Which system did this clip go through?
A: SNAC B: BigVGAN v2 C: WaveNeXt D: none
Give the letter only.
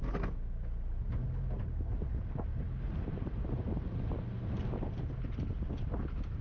D